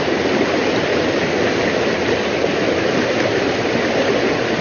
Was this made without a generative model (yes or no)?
yes